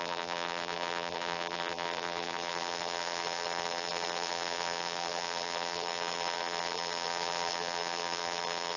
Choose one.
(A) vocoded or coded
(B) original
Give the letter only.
A